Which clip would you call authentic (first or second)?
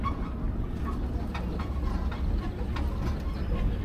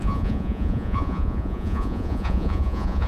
first